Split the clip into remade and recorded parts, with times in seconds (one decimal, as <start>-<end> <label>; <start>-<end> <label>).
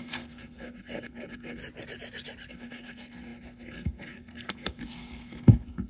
0.0-1.6 remade; 1.6-2.5 recorded; 2.5-5.9 remade